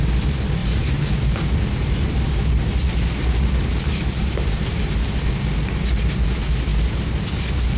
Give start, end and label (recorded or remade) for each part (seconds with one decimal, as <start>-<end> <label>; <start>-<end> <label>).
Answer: 0.0-0.6 recorded; 0.6-5.3 remade; 5.3-7.8 recorded